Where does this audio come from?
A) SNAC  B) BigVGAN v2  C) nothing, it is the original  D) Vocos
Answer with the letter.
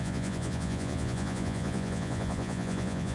D